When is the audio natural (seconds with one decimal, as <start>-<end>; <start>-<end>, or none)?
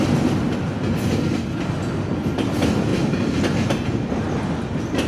0.0-5.1